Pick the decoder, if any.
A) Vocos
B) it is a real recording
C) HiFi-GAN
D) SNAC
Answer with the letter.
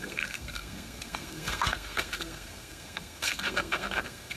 D